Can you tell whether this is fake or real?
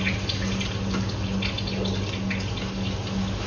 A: real